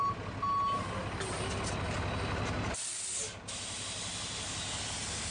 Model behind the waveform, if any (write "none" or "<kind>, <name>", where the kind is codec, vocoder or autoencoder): none